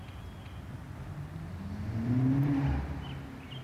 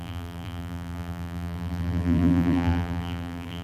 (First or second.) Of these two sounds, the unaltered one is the first